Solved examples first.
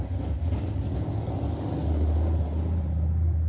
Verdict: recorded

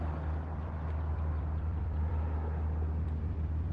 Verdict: remade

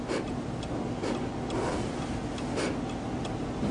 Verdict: recorded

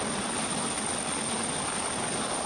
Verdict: recorded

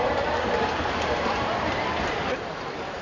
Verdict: remade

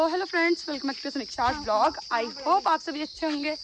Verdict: recorded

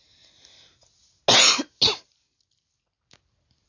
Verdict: recorded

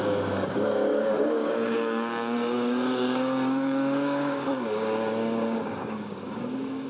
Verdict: remade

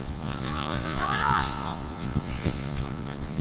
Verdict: remade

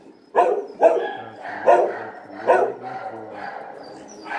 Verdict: recorded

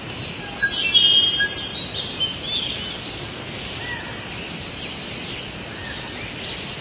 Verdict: recorded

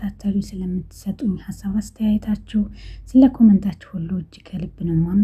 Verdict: recorded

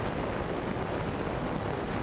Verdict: recorded